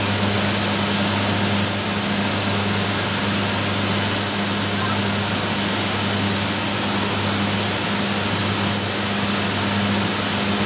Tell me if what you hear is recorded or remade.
recorded